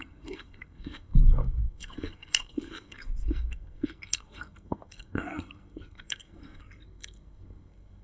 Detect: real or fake fake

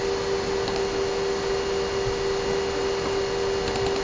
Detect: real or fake real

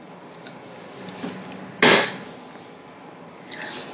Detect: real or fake real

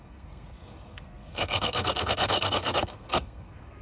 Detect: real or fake fake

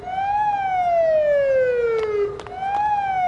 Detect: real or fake real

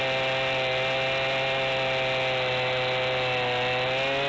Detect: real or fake real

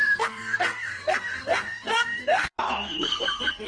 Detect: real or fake fake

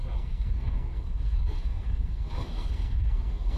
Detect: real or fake fake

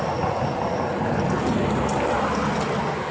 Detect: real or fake real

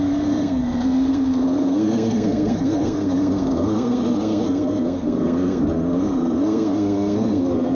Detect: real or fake fake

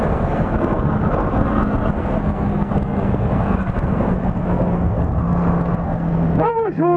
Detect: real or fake fake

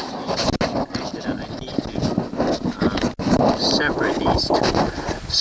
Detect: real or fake real